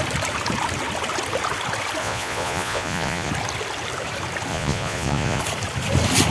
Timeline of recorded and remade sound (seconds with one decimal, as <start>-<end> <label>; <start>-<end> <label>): 0.0-2.0 recorded; 2.0-3.3 remade; 3.3-4.5 recorded; 4.5-5.4 remade; 5.4-6.3 recorded